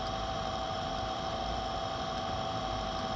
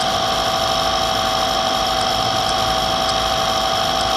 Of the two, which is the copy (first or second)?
first